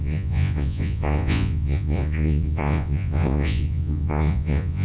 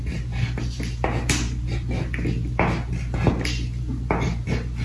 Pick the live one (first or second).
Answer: second